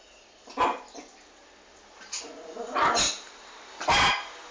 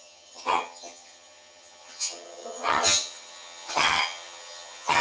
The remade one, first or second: second